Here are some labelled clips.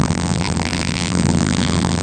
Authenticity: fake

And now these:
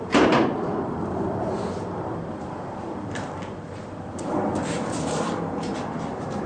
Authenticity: fake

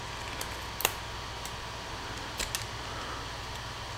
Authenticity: real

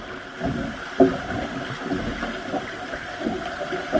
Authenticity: real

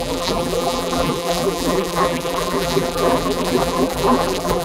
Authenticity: fake